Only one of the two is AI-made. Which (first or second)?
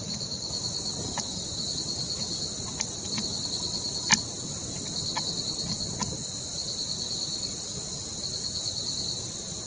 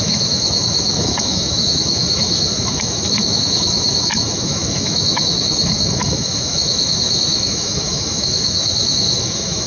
second